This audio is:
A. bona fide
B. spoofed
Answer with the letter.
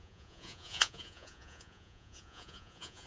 B